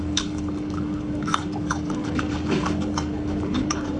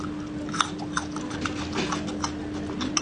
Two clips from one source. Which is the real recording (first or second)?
second